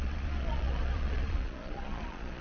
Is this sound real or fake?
fake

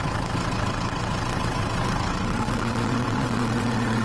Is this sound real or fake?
fake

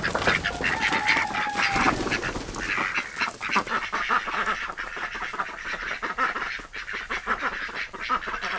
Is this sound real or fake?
real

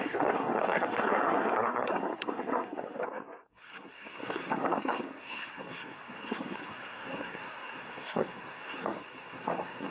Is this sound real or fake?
fake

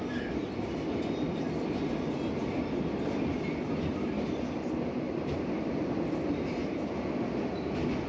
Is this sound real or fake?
real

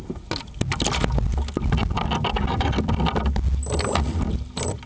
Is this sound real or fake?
real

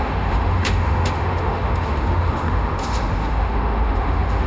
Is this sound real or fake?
fake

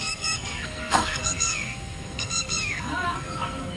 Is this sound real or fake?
fake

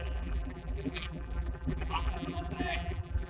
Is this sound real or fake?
fake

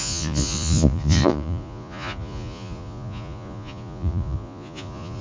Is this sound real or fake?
fake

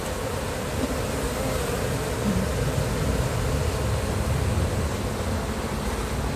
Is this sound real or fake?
real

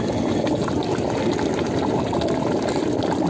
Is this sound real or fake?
real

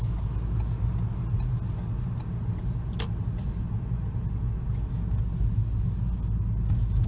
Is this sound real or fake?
real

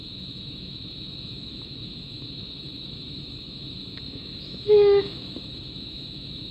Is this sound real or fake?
fake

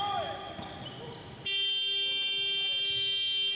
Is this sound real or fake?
real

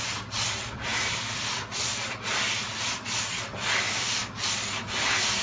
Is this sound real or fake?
real